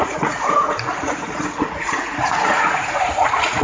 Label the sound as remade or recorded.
remade